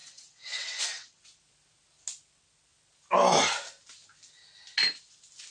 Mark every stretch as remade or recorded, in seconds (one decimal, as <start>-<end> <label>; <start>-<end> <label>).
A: 0.0-1.2 remade; 1.2-5.5 recorded